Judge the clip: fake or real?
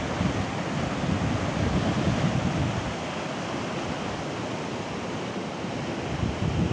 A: real